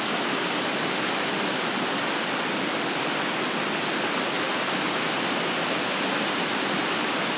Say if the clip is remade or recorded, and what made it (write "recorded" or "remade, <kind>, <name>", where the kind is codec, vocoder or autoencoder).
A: recorded